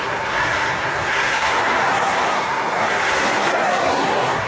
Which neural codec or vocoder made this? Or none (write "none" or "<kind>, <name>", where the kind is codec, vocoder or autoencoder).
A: codec, SNAC